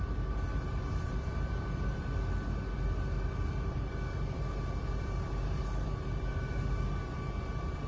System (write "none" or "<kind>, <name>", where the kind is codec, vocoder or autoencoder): vocoder, BigVGAN v2